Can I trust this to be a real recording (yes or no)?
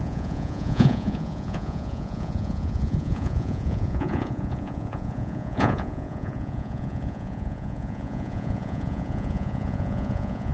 no